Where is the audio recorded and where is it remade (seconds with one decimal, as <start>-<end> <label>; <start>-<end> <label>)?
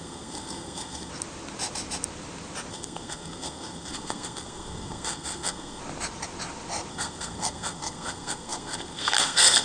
0.0-1.1 remade; 1.1-2.7 recorded; 2.7-5.8 remade; 5.8-6.9 recorded; 6.9-9.6 remade